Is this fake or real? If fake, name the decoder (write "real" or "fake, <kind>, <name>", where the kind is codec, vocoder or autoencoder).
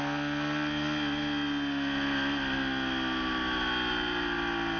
real